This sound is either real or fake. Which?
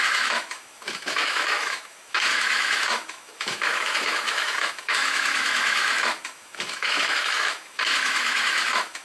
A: fake